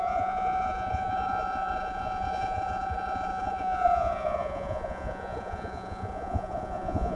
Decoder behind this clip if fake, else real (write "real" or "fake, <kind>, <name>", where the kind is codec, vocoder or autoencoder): fake, vocoder, Vocos